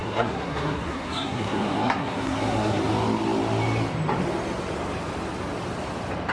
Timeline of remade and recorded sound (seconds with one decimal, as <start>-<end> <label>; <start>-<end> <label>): 0.0-2.8 remade; 2.8-6.3 recorded